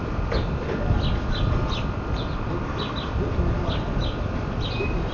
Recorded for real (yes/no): yes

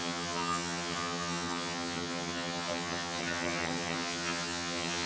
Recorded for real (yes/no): no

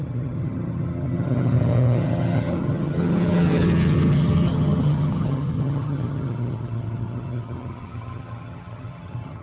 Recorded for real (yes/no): no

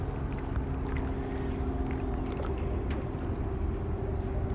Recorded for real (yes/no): yes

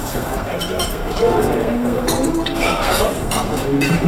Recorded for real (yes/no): no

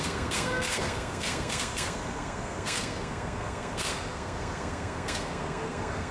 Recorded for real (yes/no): no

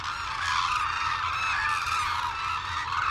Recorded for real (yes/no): yes